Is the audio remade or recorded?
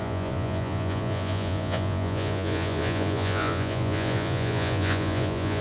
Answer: remade